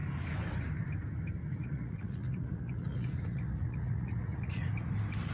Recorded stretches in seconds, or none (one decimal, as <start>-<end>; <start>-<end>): 0.0-1.5; 4.7-5.3